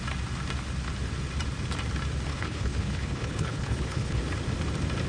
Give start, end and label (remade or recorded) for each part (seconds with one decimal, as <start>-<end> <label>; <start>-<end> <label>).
0.0-2.3 recorded; 2.3-4.2 remade; 4.2-5.1 recorded